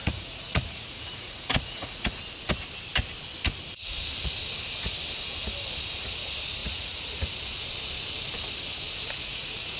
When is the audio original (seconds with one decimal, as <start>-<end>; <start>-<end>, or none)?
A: 2.2-6.6; 7.3-9.3